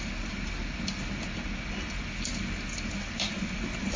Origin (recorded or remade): recorded